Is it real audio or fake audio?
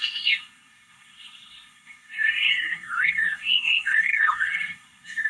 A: fake